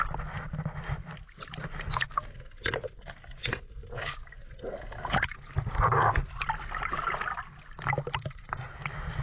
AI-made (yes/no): no